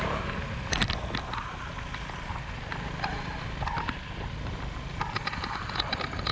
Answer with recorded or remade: recorded